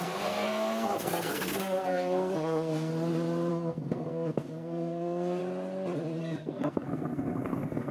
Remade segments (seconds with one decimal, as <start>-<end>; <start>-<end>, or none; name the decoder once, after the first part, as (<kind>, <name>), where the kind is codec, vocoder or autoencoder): 0.0-2.9 (codec, SNAC); 3.5-5.4; 6.2-7.9